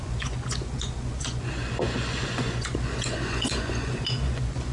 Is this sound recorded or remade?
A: remade